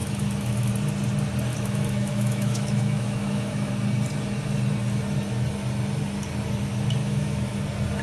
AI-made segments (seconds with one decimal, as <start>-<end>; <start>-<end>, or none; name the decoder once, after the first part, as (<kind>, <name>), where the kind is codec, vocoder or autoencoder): 0.0-0.7 (autoencoder, DAC-VAE); 1.5-3.7; 7.0-7.6